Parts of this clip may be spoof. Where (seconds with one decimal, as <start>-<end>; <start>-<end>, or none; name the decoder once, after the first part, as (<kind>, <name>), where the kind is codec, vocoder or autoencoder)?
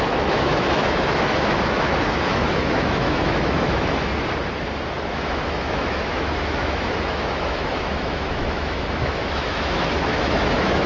0.0-4.1 (autoencoder, DAC-VAE); 5.1-10.9